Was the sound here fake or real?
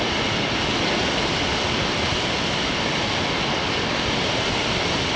real